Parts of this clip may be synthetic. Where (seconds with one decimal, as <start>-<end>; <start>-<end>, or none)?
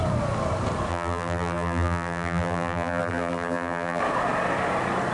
0.9-4.0